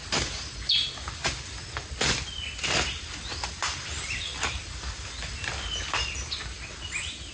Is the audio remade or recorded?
recorded